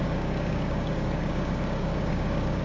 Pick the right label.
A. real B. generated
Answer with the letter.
B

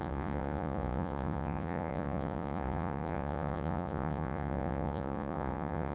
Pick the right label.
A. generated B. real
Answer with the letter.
A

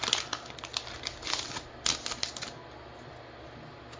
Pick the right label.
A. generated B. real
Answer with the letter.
B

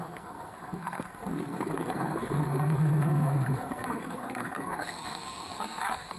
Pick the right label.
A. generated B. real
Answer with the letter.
A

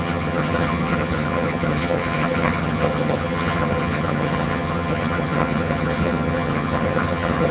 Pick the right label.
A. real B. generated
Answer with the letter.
B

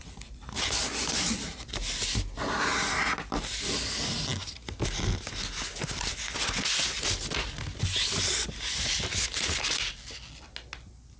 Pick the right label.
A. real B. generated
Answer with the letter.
A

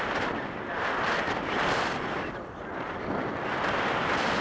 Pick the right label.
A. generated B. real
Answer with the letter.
B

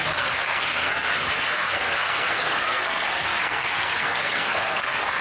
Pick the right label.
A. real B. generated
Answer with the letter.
B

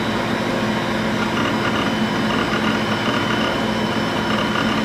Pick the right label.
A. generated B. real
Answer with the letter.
B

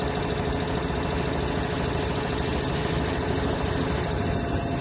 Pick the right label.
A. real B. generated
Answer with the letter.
A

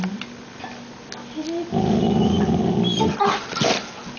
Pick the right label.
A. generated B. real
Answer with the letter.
B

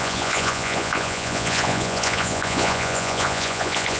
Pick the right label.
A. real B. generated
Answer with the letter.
B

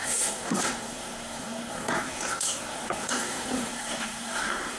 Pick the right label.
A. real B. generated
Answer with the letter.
B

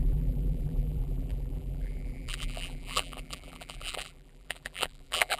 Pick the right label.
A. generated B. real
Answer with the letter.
A